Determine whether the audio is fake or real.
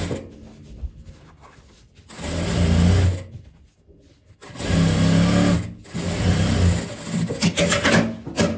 real